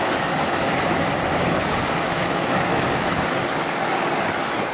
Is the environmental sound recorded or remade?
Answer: remade